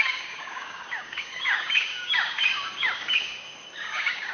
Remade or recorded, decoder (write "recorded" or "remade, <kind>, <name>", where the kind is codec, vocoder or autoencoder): remade, codec, DAC